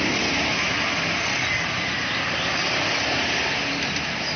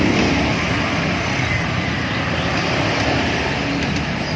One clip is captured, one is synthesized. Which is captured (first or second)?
first